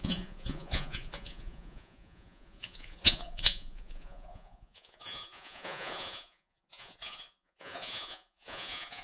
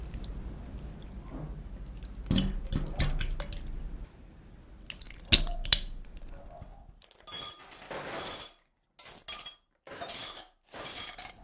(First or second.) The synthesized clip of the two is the first